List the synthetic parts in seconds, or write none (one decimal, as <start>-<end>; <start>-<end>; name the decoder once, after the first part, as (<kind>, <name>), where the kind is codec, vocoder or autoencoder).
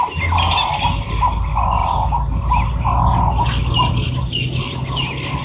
none